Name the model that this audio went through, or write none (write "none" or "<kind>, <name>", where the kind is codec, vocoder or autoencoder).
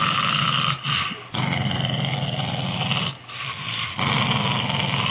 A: none